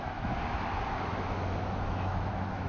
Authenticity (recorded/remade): remade